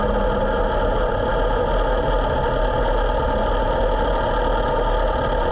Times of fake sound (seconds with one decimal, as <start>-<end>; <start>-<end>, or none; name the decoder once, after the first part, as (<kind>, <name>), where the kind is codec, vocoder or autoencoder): none